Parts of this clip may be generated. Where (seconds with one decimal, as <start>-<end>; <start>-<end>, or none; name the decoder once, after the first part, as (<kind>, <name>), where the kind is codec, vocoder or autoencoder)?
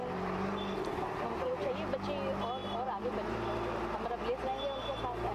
none